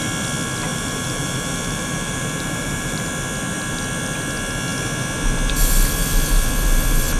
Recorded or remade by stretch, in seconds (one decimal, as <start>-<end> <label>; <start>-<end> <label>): 0.0-0.7 recorded; 0.7-3.1 remade; 3.1-7.2 recorded